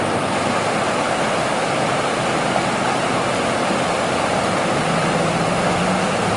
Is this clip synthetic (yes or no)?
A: no